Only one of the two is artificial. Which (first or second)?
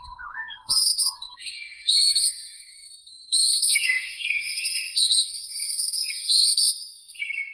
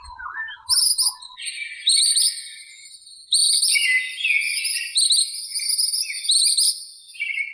first